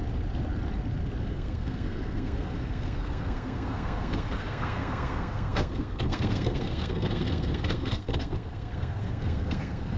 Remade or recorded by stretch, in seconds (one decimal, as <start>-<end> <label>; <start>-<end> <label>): 0.0-1.2 recorded; 1.2-10.0 remade